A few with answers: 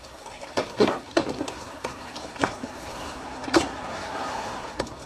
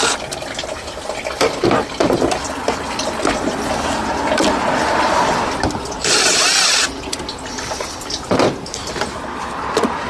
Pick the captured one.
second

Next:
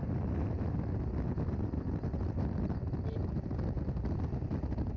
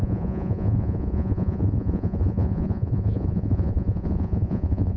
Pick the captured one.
first